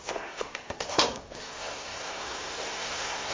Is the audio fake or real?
fake